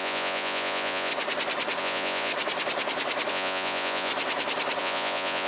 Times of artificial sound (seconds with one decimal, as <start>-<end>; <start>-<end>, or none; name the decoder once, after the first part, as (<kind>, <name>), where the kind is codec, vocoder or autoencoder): 0.0-1.1 (vocoder, Vocos); 1.8-2.3; 3.3-4.1; 4.8-5.5